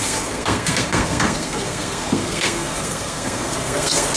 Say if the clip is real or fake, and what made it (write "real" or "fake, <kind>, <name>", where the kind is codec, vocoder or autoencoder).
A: fake, codec, SNAC